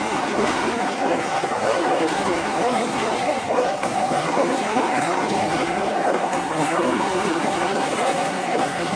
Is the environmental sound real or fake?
fake